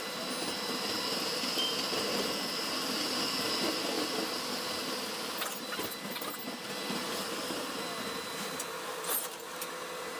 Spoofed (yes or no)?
no